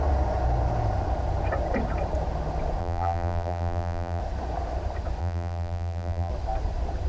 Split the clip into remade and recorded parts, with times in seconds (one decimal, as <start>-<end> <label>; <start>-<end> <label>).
0.0-2.8 recorded; 2.8-4.2 remade; 4.2-5.2 recorded; 5.2-6.3 remade; 6.3-7.1 recorded